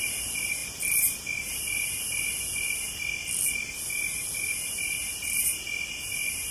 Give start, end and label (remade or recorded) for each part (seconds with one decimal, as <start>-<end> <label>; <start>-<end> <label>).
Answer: 0.0-6.5 recorded